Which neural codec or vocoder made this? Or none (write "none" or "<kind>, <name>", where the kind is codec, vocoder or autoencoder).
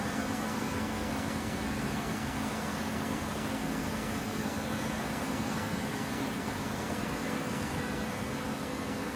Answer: codec, SNAC